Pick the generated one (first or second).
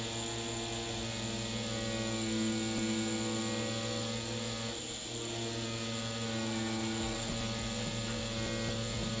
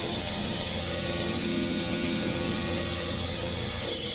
second